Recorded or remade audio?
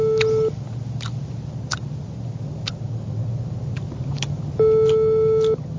recorded